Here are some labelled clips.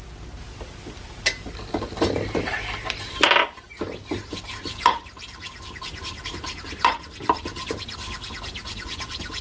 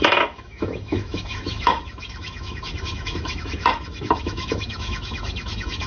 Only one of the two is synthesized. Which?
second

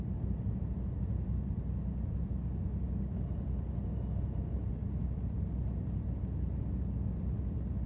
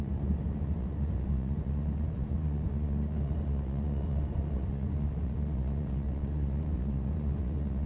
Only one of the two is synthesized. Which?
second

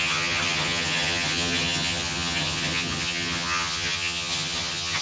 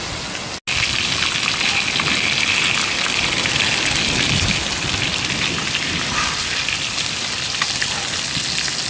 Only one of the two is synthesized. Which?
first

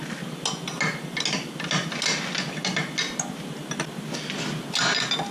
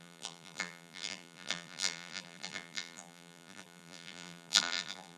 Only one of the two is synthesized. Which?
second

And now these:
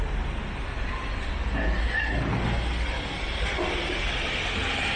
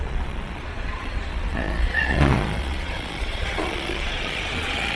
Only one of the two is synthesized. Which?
second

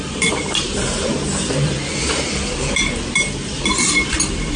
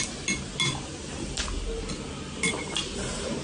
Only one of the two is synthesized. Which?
first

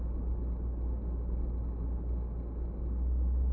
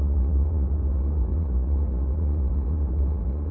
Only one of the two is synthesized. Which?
second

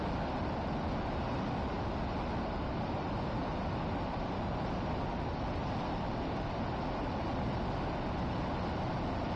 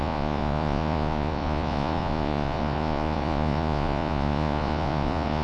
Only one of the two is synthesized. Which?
second